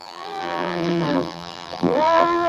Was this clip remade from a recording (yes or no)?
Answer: yes